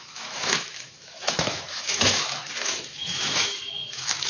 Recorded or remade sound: remade